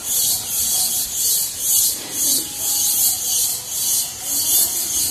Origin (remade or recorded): recorded